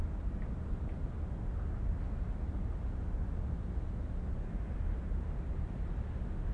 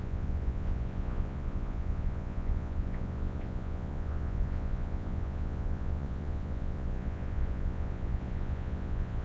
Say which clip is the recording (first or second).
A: first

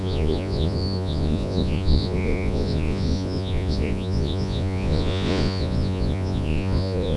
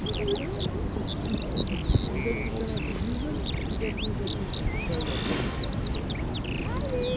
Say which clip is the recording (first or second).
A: second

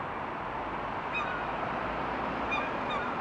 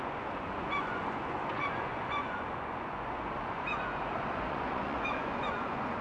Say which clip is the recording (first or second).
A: first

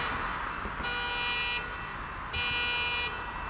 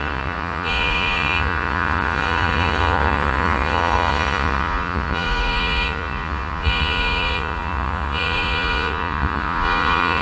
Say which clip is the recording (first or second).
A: first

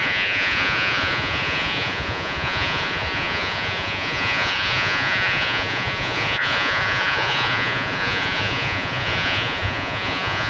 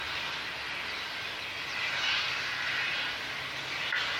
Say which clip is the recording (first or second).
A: second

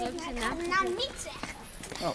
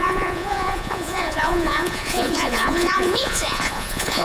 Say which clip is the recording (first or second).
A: first